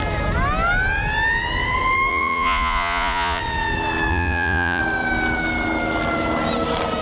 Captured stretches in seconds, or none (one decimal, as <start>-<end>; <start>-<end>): 0.0-2.1; 3.4-4.1; 4.8-7.0